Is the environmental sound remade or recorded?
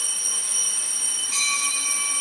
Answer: recorded